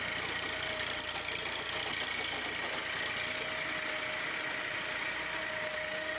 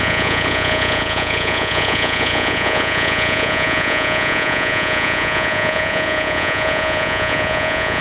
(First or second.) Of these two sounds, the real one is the first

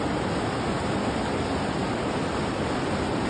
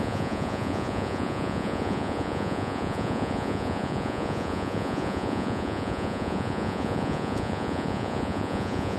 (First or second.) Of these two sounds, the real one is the first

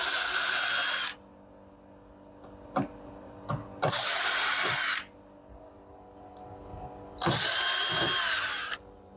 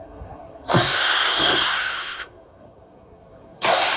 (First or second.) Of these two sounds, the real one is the first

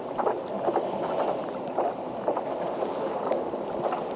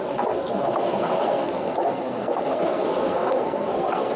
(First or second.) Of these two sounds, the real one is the first